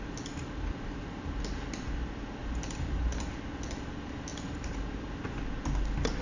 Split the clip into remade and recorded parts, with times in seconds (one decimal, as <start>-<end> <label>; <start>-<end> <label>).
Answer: 0.0-4.3 recorded; 4.3-5.0 remade; 5.0-6.2 recorded